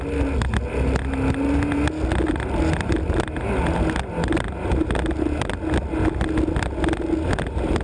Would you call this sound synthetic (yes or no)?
no